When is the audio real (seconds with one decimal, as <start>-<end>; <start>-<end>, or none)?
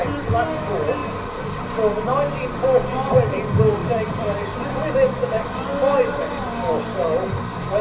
0.0-7.8